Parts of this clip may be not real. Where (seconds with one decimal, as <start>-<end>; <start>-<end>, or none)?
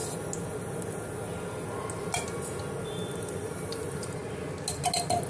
3.2-4.2